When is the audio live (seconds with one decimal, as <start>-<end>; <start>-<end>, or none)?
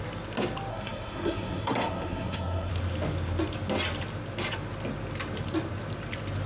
0.0-0.7; 2.7-6.5